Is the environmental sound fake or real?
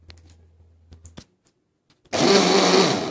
real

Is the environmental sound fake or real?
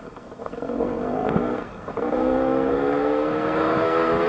fake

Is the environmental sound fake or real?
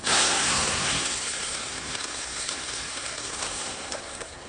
fake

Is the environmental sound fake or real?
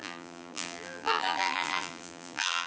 fake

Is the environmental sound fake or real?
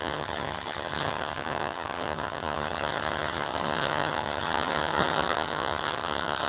fake